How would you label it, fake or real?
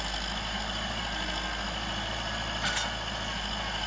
real